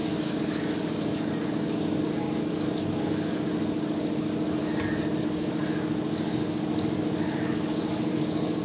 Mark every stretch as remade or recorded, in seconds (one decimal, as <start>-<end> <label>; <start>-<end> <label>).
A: 0.0-4.6 remade; 4.6-5.2 recorded; 5.2-8.6 remade